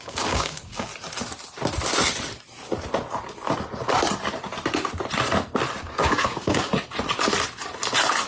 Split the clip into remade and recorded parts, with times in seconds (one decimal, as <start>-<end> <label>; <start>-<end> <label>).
0.0-0.9 remade; 0.9-5.8 recorded; 5.8-6.7 remade; 6.7-8.3 recorded